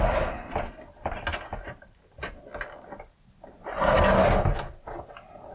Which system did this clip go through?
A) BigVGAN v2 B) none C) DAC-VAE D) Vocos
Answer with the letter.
B